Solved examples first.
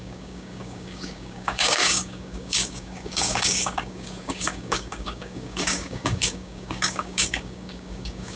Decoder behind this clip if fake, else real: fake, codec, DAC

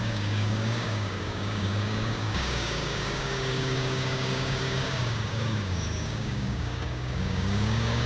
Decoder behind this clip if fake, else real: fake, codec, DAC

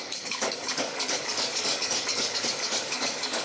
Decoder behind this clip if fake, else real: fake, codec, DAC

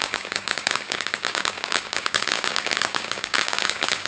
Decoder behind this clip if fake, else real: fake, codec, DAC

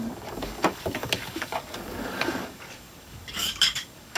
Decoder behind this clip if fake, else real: fake, codec, DAC